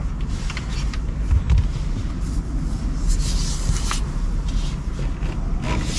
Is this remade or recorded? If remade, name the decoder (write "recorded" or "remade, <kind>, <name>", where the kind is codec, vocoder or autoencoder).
recorded